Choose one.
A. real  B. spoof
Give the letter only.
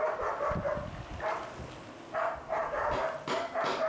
A